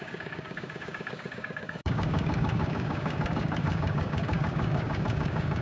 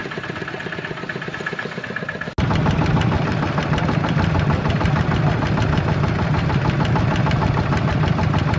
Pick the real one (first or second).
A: second